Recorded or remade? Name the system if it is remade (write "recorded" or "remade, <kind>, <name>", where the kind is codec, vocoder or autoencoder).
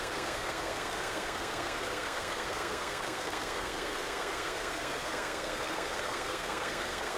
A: remade, codec, SNAC